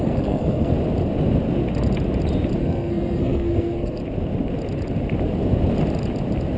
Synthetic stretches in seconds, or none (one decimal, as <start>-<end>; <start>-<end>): 0.0-0.7; 2.6-4.0